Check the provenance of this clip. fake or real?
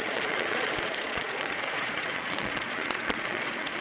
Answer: fake